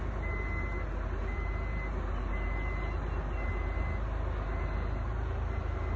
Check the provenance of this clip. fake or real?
real